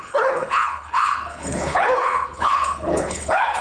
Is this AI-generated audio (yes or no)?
yes